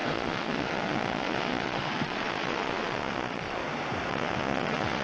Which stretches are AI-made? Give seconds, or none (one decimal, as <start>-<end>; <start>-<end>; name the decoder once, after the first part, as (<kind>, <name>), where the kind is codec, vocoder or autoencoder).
0.0-3.6 (vocoder, Vocos); 4.1-5.0